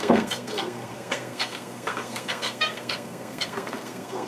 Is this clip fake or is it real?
fake